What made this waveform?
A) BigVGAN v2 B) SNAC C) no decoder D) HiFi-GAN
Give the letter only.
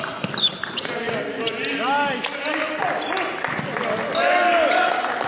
C